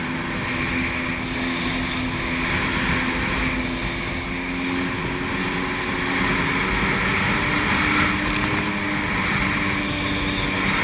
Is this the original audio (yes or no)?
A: yes